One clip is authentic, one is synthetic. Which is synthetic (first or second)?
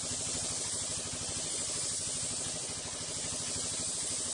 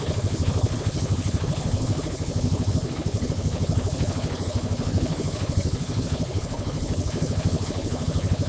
second